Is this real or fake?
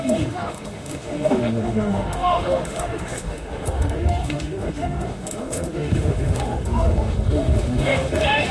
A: fake